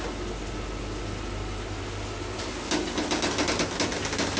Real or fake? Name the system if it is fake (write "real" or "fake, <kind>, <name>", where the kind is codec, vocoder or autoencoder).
real